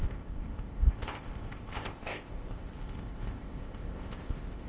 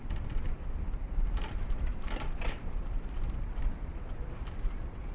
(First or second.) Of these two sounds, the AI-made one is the first